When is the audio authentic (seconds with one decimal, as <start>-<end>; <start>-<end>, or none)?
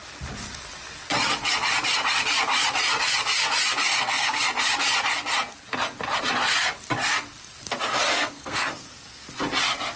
0.0-3.9; 4.4-8.1; 9.2-10.0